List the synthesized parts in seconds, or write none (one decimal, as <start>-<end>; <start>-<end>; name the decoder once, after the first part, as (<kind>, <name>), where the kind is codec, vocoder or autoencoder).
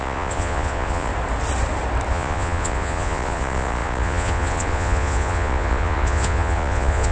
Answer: 0.0-1.1 (vocoder, Vocos); 2.1-7.1